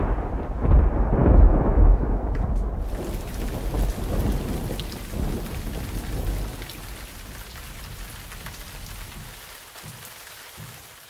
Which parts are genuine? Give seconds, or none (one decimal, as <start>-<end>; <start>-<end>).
0.0-1.2; 2.5-11.1